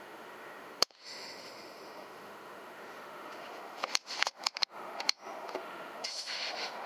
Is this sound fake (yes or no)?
yes